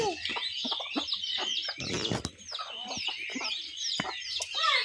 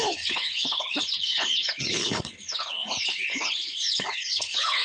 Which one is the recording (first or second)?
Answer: first